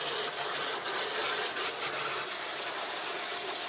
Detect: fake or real real